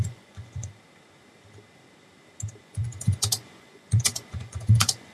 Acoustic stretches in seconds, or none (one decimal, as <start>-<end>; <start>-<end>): 0.7-2.6